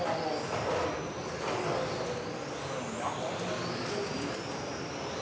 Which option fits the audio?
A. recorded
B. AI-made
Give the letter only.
A